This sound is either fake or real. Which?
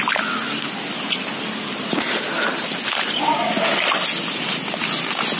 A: real